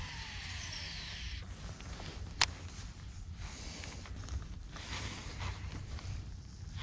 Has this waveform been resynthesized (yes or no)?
no